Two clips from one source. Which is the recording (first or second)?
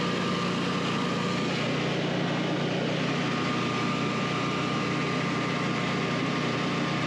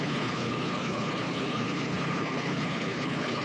first